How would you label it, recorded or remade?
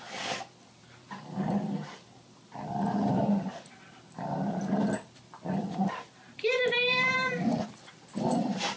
remade